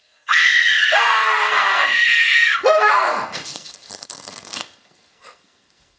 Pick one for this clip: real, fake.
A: fake